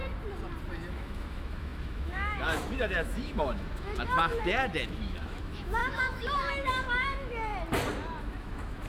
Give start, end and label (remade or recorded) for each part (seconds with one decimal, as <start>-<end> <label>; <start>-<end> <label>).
0.0-0.9 recorded; 0.9-7.5 remade; 7.5-8.2 recorded; 8.2-8.9 remade